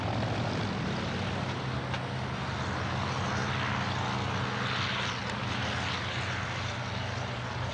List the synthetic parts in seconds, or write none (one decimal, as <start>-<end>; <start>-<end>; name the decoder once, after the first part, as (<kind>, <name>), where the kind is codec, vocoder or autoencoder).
none